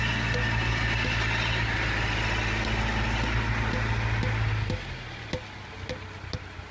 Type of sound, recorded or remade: recorded